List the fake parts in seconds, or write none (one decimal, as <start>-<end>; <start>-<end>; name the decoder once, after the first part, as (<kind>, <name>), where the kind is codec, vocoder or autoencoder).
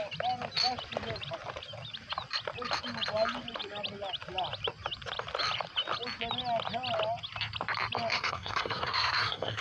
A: 8.1-9.6 (codec, SNAC)